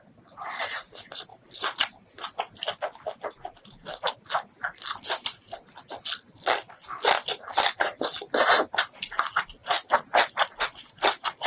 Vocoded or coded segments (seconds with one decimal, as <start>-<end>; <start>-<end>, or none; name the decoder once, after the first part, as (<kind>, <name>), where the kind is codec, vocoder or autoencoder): 1.3-5.6 (vocoder, BigVGAN v2)